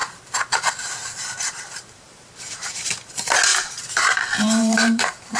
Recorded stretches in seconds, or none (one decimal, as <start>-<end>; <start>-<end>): 2.9-3.5